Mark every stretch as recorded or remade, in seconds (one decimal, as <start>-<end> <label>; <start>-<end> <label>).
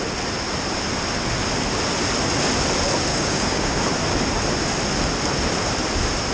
0.0-3.1 recorded; 3.1-3.8 remade; 3.8-6.3 recorded